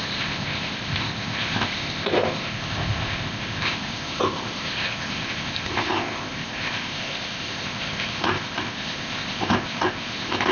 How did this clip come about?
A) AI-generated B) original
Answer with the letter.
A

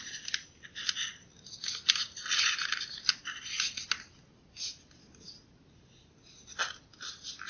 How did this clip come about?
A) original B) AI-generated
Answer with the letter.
A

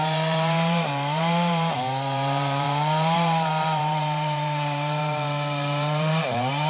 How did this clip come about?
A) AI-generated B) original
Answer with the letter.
A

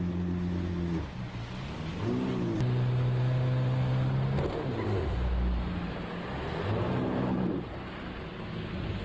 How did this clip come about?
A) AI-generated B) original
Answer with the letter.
B